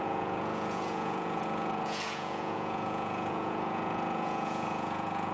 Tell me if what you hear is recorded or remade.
remade